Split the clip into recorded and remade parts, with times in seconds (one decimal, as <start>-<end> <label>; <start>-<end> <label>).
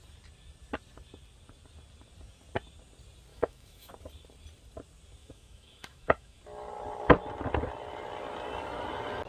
0.0-3.3 recorded; 3.3-3.9 remade; 3.9-5.2 recorded; 5.2-6.4 remade; 6.4-9.3 recorded